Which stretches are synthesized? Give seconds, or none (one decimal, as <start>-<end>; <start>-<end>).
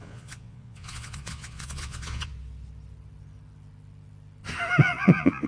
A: 0.0-2.3; 4.8-5.5